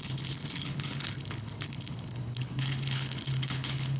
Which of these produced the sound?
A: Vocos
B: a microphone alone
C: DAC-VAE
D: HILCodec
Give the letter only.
D